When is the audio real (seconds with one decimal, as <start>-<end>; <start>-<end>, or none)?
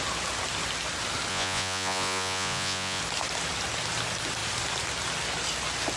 0.0-1.3; 3.0-6.0